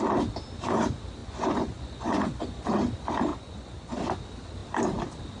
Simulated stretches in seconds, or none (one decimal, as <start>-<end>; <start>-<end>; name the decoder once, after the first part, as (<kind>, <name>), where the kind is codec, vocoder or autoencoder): 1.2-2.6 (vocoder, Vocos); 3.3-4.0